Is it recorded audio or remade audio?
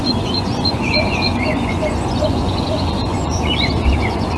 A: remade